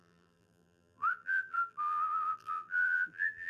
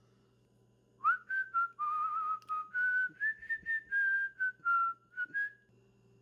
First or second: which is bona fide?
second